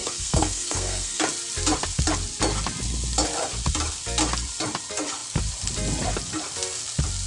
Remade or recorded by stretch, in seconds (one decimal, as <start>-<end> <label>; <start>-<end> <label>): 0.0-1.2 remade; 1.2-7.3 recorded